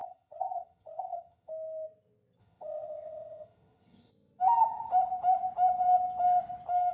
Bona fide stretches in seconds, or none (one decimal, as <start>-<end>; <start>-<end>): 1.5-2.4; 4.1-6.9